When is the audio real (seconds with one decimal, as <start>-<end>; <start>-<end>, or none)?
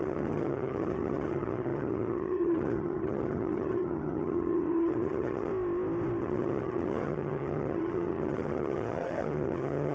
5.5-6.2